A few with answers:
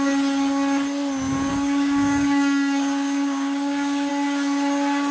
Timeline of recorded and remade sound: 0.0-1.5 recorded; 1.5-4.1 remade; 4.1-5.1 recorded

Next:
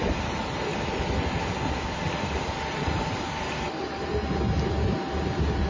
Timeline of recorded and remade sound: 0.0-0.7 recorded; 0.7-4.1 remade; 4.1-5.7 recorded